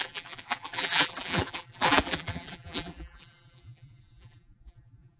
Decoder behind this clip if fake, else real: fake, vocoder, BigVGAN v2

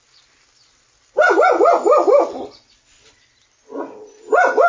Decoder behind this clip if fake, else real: real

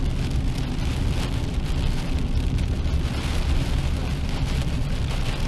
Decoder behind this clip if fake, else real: real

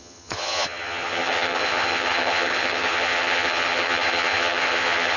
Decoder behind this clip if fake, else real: fake, vocoder, HiFi-GAN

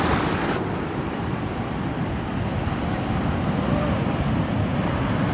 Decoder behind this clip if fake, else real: fake, vocoder, BigVGAN v2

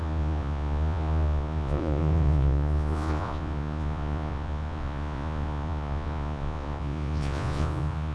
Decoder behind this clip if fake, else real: fake, vocoder, Vocos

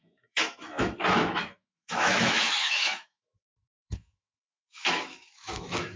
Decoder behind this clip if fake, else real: fake, autoencoder, DAC-VAE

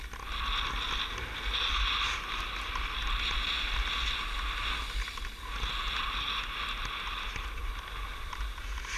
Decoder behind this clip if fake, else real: real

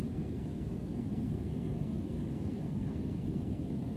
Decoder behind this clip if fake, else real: fake, codec, SNAC